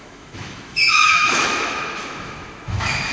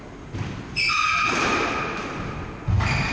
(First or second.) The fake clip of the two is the first